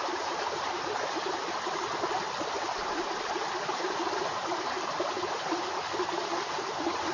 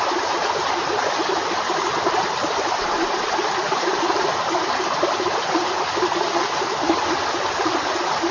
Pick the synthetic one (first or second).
first